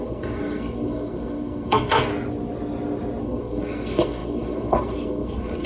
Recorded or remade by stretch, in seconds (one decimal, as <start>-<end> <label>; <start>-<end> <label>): 0.0-2.1 remade; 2.1-3.2 recorded; 3.2-5.7 remade